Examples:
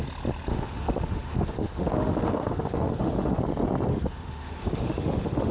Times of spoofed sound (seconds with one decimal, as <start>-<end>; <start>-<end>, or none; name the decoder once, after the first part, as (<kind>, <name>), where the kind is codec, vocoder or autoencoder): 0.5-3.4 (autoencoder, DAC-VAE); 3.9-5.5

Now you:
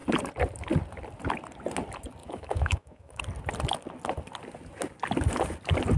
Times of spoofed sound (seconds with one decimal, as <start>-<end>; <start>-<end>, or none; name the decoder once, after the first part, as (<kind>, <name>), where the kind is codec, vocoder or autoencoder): 2.2-3.2 (autoencoder, DAC-VAE)

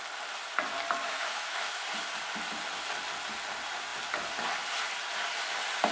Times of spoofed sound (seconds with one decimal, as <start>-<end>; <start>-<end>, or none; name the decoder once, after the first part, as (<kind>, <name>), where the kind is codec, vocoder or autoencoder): 1.0-1.9 (autoencoder, DAC-VAE)

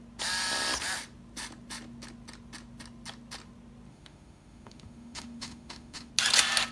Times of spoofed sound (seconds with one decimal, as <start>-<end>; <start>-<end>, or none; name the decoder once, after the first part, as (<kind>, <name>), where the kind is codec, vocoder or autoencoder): 3.9-6.1 (autoencoder, DAC-VAE)

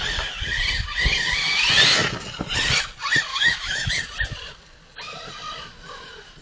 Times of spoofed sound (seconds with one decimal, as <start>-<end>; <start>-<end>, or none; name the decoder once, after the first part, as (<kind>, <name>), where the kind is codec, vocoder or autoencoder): 3.3-3.9 (autoencoder, DAC-VAE)

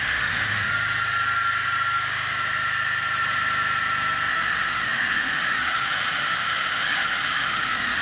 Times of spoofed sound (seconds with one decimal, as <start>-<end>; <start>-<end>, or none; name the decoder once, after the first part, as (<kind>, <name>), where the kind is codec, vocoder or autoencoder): 0.0-0.7 (autoencoder, DAC-VAE); 4.3-8.0